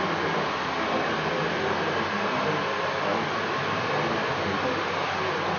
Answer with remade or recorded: recorded